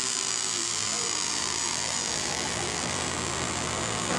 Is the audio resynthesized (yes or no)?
yes